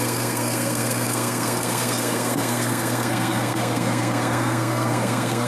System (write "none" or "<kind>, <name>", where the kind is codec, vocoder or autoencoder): codec, SNAC